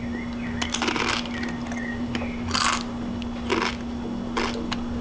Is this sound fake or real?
real